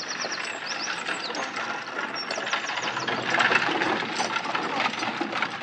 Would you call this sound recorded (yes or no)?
yes